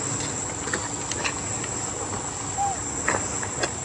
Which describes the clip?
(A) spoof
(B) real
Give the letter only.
B